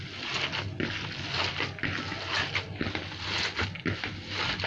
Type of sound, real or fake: real